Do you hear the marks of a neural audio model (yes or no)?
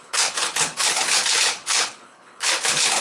yes